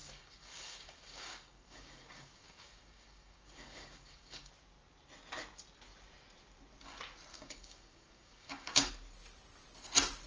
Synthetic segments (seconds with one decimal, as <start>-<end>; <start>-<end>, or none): 0.0-4.5; 7.3-8.9